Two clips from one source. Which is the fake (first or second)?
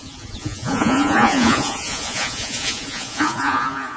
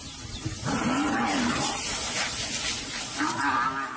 first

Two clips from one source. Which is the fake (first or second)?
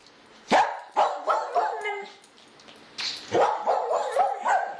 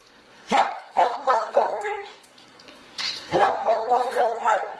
second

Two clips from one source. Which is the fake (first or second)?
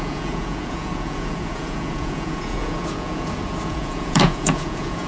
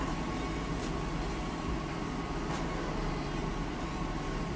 first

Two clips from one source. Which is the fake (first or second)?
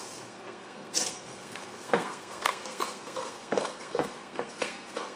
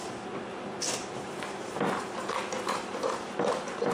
first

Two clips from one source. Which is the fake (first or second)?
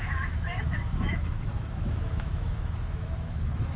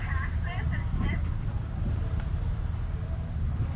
first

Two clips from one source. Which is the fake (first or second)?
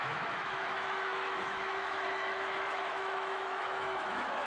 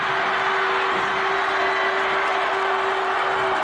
first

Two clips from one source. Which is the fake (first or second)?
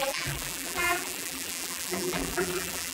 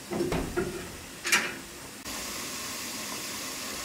first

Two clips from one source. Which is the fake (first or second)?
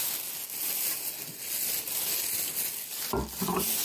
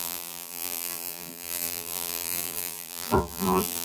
second